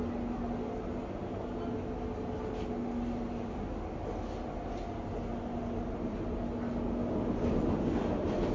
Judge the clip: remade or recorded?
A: recorded